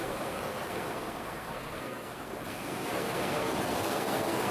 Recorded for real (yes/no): no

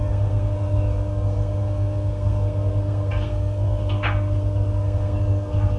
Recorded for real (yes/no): no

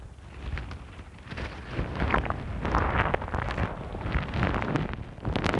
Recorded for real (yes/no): yes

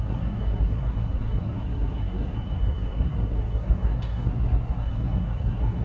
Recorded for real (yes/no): no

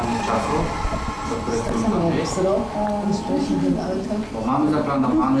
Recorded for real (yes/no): yes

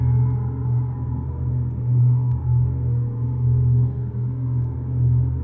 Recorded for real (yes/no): no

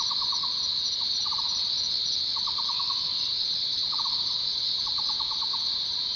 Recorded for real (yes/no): yes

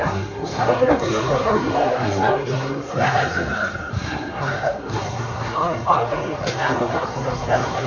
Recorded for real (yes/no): no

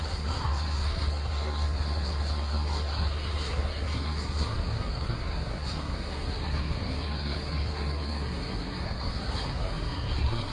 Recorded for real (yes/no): no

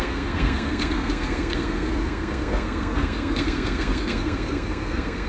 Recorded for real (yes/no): no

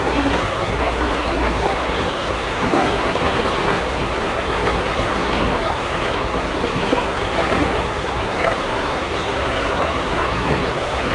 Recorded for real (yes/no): no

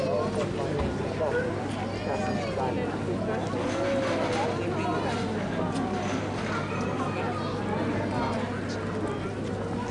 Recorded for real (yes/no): yes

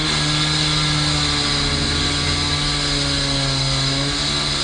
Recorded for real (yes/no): yes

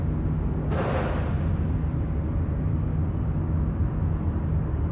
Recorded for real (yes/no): yes